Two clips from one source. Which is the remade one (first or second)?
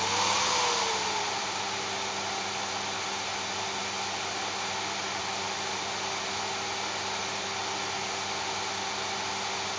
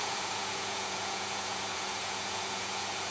second